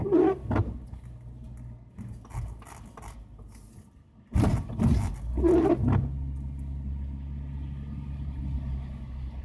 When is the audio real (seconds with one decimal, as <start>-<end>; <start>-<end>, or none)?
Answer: 0.0-9.4